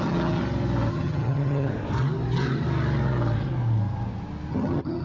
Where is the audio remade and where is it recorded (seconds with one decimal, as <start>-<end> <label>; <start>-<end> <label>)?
0.0-0.4 remade; 0.4-0.9 recorded; 0.9-1.7 remade; 1.7-4.5 recorded; 4.5-5.0 remade